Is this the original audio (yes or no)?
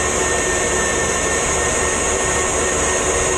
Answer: yes